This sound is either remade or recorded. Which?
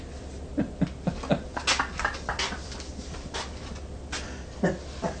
recorded